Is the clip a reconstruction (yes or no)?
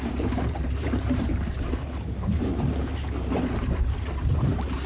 yes